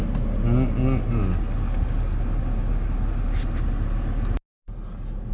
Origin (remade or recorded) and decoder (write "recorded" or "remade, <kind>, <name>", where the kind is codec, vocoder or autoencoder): recorded